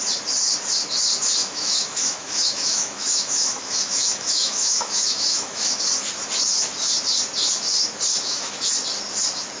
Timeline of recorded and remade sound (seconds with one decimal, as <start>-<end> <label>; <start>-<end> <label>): 0.0-1.4 recorded; 1.4-5.8 remade; 5.8-8.1 recorded; 8.1-8.7 remade; 8.7-9.6 recorded